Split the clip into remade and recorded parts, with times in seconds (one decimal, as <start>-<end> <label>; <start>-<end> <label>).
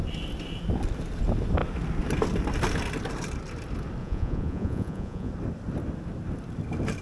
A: 0.0-4.0 recorded; 4.0-5.3 remade; 5.3-7.0 recorded